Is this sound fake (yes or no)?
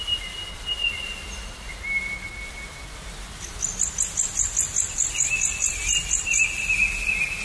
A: no